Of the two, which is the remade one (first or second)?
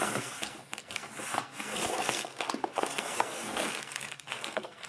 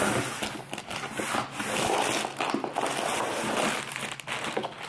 first